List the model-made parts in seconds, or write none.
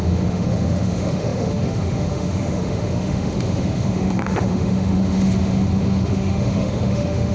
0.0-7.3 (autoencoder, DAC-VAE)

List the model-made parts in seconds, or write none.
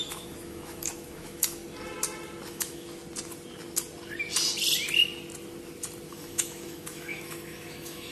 0.0-1.6 (autoencoder, DAC-VAE); 2.5-3.0; 6.1-8.1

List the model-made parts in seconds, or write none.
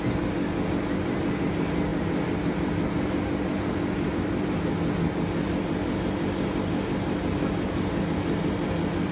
none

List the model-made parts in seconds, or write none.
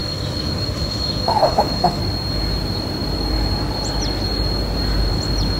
0.0-2.0 (autoencoder, DAC-VAE)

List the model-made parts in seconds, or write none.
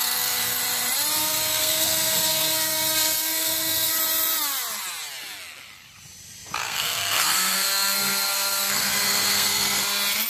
0.0-0.6 (codec, SNAC); 1.2-3.9; 6.6-9.8